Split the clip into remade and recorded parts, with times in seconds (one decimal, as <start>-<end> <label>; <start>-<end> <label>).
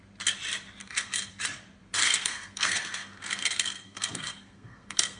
0.0-0.8 recorded; 0.8-1.3 remade; 1.3-2.0 recorded; 2.0-5.2 remade